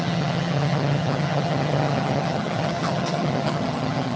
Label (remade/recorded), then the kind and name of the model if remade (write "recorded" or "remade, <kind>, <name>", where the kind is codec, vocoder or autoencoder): remade, vocoder, HiFi-GAN